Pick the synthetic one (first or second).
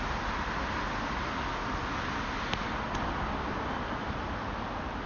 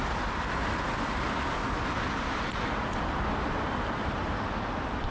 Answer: second